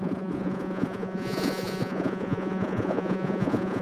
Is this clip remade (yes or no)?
yes